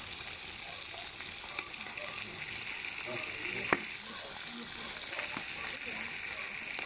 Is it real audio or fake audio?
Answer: real